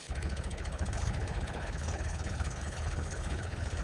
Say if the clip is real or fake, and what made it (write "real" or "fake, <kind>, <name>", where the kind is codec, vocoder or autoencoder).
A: fake, codec, HILCodec